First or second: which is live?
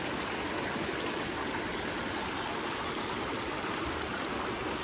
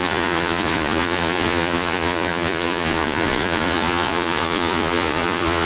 first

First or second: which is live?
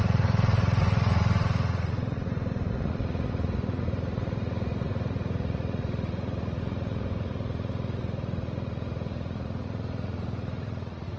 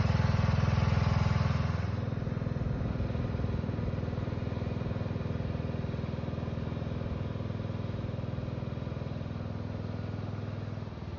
second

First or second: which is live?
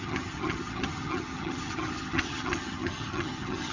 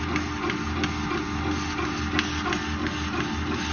second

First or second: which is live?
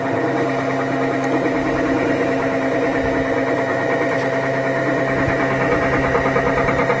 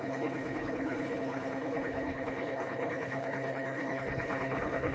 first